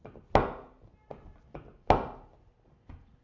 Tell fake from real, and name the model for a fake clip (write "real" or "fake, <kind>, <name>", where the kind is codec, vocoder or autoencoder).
real